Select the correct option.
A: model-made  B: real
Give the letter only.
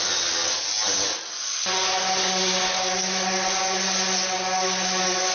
B